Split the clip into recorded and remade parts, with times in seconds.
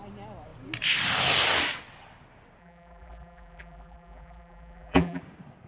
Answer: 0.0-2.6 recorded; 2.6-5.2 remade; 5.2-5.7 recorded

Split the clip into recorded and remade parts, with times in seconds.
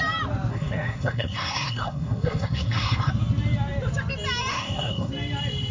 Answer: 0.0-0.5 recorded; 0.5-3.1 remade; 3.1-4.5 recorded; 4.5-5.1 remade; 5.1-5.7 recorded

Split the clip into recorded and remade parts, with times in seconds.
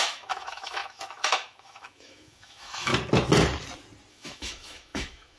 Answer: 0.0-2.9 remade; 2.9-4.1 recorded; 4.1-5.4 remade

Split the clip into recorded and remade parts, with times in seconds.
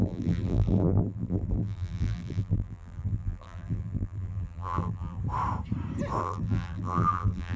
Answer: 0.0-5.2 remade; 5.2-6.2 recorded; 6.2-7.6 remade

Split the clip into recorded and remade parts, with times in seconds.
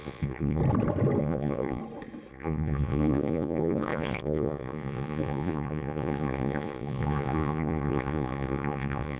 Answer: 0.0-0.6 remade; 0.6-1.2 recorded; 1.2-1.8 remade; 1.8-2.3 recorded; 2.3-9.2 remade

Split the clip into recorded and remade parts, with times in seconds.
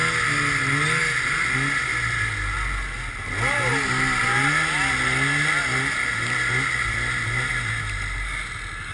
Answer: 0.0-8.9 recorded